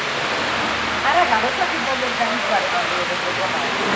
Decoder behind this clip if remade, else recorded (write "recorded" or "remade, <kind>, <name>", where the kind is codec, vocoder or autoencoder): recorded